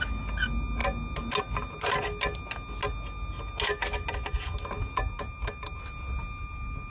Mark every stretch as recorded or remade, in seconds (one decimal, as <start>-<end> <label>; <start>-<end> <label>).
0.0-6.9 recorded